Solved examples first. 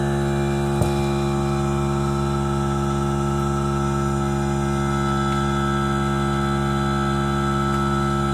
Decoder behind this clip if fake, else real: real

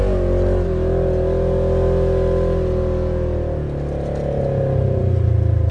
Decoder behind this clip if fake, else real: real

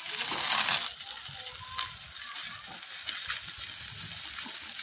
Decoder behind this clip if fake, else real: real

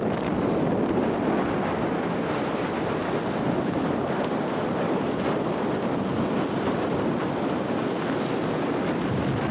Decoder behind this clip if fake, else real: real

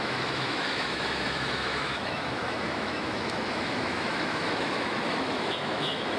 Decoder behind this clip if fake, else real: fake, autoencoder, DAC-VAE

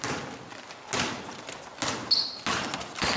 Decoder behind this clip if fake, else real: real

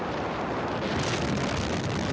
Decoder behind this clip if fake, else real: real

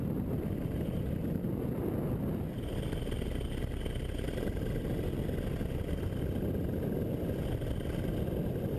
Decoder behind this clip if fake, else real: real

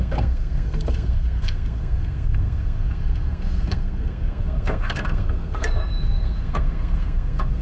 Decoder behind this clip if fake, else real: fake, codec, SNAC